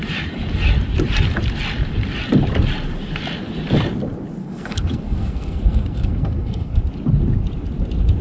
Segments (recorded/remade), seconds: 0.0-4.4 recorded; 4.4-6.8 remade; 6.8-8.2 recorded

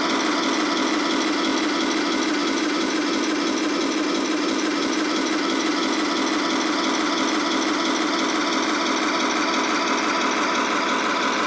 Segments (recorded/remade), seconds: 0.0-2.4 recorded; 2.4-2.9 remade; 2.9-3.8 recorded; 3.8-5.7 remade; 5.7-11.5 recorded

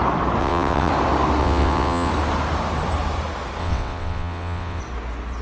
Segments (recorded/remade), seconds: 0.0-0.4 recorded; 0.4-0.9 remade; 0.9-1.4 recorded; 1.4-2.1 remade; 2.1-3.6 recorded; 3.6-4.8 remade; 4.8-5.4 recorded

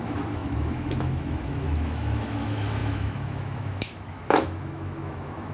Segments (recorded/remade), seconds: 0.0-5.5 remade